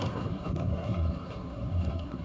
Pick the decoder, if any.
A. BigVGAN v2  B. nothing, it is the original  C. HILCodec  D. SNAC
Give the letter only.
D